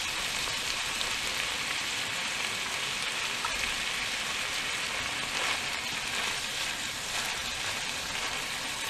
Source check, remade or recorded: recorded